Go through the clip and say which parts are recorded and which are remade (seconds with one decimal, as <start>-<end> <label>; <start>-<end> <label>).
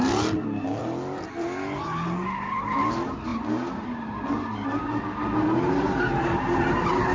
0.0-7.1 recorded